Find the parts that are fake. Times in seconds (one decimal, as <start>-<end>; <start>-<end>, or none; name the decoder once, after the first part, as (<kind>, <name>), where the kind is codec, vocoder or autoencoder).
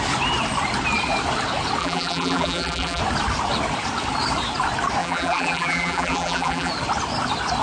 1.8-3.0 (vocoder, BigVGAN v2); 5.0-6.7